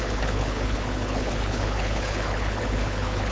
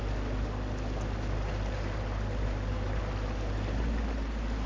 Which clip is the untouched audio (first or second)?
second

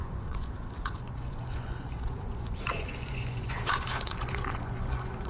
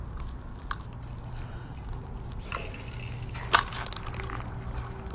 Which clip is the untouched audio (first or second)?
second